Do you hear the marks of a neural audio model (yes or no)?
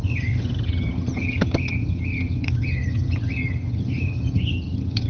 yes